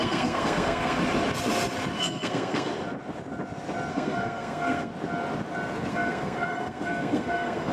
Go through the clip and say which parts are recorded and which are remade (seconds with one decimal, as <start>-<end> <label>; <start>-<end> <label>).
0.0-1.0 remade; 1.0-2.0 recorded; 2.0-2.7 remade; 2.7-3.9 recorded; 3.9-4.9 remade; 4.9-5.9 recorded; 5.9-7.7 remade